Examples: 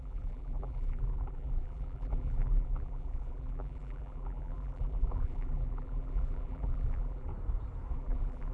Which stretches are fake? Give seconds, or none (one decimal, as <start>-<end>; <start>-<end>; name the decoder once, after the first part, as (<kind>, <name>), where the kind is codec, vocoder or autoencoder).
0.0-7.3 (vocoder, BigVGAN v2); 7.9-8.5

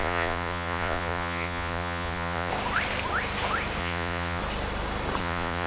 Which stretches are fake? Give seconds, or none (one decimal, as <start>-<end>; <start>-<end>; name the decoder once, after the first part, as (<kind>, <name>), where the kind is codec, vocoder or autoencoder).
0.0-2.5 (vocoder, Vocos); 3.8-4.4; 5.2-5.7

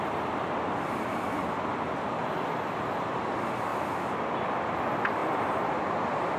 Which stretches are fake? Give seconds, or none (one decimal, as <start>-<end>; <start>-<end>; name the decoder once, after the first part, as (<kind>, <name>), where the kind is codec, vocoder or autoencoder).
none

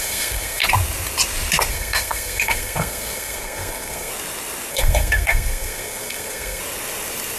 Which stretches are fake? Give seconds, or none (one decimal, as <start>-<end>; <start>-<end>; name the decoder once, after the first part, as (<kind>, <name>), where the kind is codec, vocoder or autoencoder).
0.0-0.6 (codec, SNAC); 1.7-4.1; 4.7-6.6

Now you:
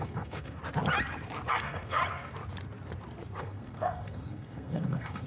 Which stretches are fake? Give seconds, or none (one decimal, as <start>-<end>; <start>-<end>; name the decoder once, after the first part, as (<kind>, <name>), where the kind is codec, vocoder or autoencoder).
0.0-0.6 (codec, SNAC); 1.5-2.0; 3.4-5.3

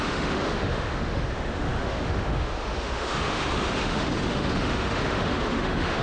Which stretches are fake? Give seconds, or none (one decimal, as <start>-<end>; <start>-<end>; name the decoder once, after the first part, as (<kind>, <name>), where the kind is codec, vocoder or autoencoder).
0.0-6.0 (autoencoder, DAC-VAE)

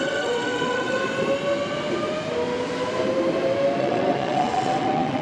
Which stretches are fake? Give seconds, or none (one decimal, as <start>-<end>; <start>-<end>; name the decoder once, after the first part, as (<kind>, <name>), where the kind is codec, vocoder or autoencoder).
0.0-1.0 (vocoder, WaveNeXt); 3.8-5.2

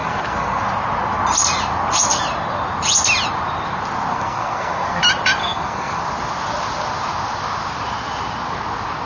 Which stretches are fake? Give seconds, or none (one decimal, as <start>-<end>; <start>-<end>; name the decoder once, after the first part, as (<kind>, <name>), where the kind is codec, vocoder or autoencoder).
0.0-0.6 (codec, SNAC); 4.1-5.0; 5.4-6.0